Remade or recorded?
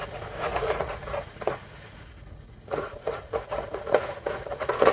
remade